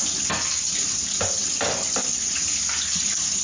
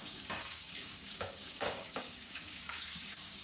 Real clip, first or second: first